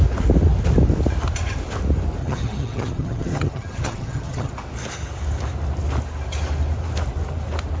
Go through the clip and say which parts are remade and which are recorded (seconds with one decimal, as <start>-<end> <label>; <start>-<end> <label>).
0.0-2.2 recorded; 2.2-4.5 remade; 4.5-7.8 recorded